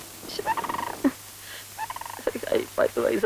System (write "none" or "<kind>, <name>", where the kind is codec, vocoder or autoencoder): none